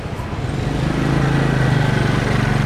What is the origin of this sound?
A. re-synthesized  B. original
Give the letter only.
B